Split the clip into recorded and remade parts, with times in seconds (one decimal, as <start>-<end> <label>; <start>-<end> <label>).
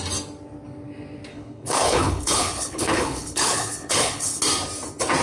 0.0-1.3 recorded; 1.3-4.4 remade; 4.4-5.2 recorded